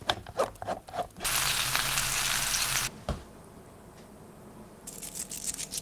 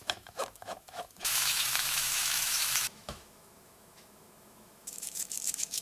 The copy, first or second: second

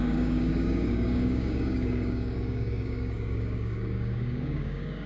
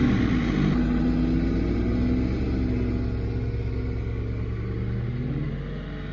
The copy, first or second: first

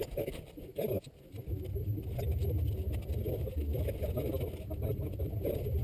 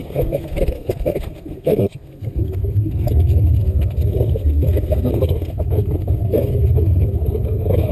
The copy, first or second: second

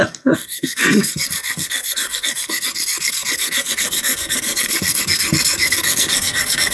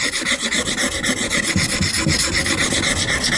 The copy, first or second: first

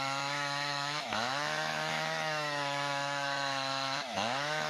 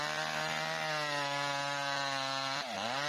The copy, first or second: first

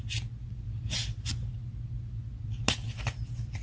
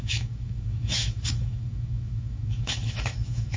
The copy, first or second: second